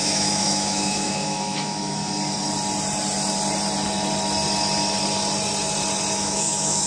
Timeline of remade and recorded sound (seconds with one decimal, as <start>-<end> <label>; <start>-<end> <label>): 0.0-2.0 remade; 2.0-6.1 recorded; 6.1-6.9 remade